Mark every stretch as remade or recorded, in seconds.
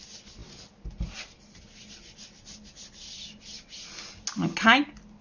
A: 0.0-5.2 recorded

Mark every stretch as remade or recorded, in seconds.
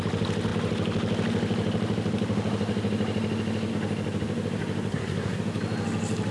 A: 0.0-4.9 recorded; 4.9-5.4 remade; 5.4-6.3 recorded